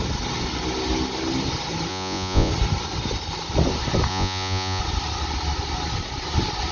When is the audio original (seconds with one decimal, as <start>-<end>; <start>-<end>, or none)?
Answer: 0.0-1.9; 2.5-4.1; 4.8-6.7